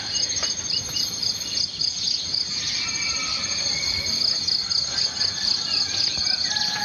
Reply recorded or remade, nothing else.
recorded